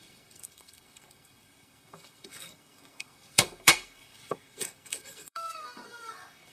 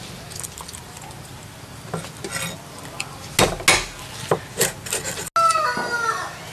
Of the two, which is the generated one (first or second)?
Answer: first